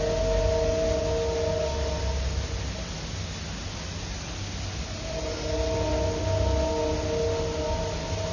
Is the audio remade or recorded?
recorded